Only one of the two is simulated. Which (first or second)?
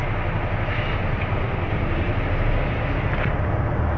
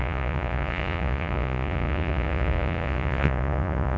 second